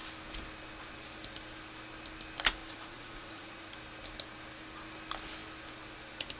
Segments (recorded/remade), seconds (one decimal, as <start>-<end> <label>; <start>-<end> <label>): 0.0-2.6 recorded; 2.6-3.7 remade; 3.7-6.4 recorded